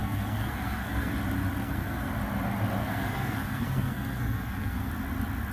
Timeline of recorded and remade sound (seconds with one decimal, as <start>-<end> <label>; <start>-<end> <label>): 0.0-1.1 remade; 1.1-1.6 recorded; 1.6-2.1 remade; 2.1-2.8 recorded; 2.8-4.9 remade; 4.9-5.5 recorded